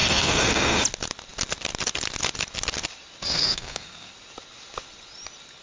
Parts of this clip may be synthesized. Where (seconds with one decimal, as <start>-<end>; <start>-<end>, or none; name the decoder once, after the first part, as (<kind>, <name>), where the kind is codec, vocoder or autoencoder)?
0.0-0.8 (codec, SNAC); 3.3-4.1